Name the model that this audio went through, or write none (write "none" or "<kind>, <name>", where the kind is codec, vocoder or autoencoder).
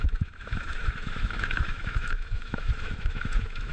autoencoder, DAC-VAE